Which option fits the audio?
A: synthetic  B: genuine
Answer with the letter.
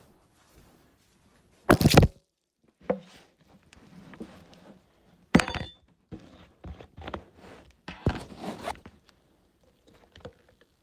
A